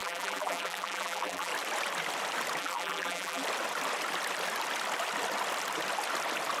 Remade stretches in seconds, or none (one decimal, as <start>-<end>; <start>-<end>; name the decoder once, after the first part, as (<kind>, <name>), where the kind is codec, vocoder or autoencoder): 0.0-1.5 (vocoder, BigVGAN v2); 2.6-3.4